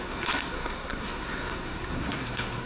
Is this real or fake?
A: fake